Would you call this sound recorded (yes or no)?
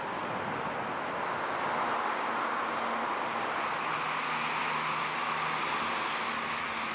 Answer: yes